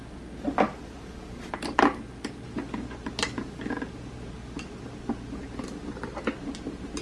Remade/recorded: recorded